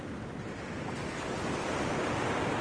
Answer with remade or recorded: recorded